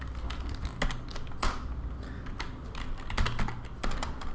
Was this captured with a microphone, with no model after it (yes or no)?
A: yes